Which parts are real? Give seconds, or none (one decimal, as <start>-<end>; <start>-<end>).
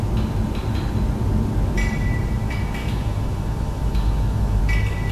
0.0-2.8; 4.6-5.1